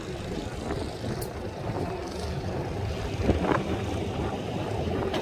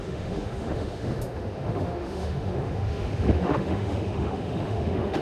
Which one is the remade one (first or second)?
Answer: second